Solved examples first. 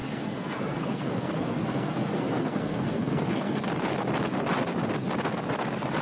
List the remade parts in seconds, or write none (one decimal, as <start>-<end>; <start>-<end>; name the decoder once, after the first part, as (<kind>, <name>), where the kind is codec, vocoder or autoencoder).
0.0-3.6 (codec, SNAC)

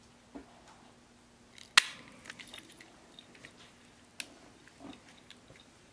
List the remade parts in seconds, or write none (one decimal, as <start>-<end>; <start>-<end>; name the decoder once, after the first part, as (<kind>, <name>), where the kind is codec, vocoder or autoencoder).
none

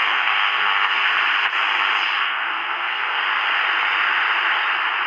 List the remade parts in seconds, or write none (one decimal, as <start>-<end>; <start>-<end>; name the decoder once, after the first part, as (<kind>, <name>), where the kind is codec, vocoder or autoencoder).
0.0-1.1 (codec, SNAC); 2.2-3.2